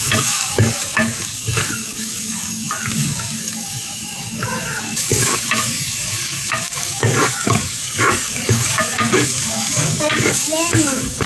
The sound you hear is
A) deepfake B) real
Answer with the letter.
A